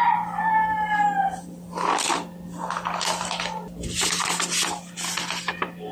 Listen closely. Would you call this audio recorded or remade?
remade